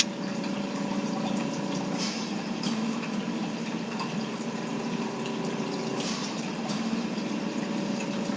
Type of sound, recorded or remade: remade